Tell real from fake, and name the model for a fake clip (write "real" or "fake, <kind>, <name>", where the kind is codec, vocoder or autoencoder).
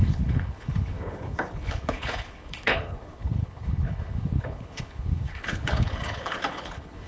fake, codec, HILCodec